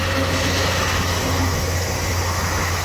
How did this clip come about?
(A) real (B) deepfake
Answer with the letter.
B